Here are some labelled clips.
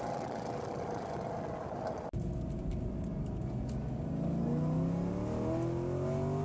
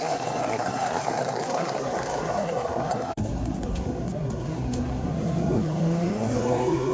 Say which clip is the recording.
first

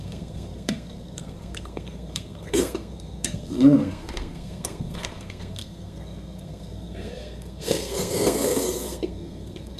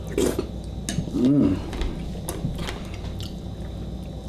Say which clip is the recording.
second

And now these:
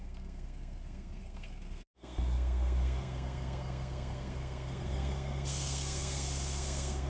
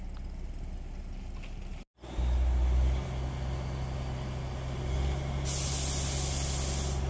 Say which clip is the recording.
second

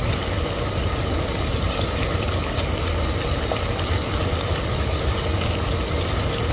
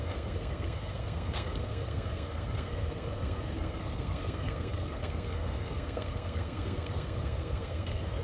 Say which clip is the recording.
first